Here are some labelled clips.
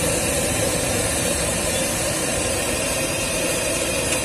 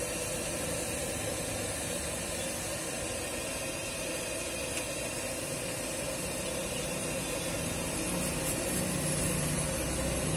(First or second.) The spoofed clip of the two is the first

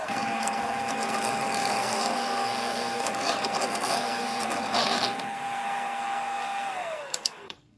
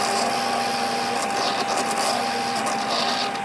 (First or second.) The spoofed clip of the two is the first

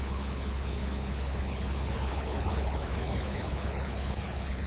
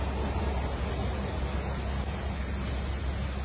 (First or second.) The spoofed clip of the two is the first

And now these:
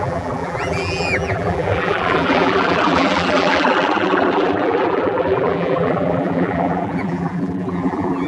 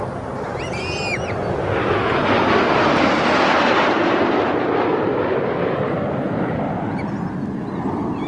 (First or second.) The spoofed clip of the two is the first